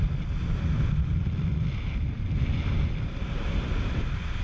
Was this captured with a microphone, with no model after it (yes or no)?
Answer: yes